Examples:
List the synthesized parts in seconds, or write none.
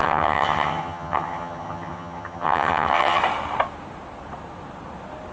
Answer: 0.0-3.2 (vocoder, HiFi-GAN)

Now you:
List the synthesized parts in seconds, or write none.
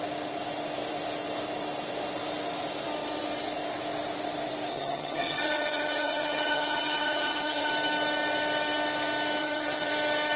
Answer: 4.7-7.7 (vocoder, HiFi-GAN); 9.4-9.9